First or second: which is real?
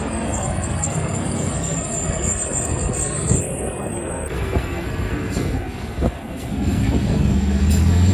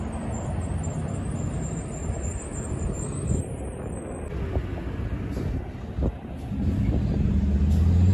second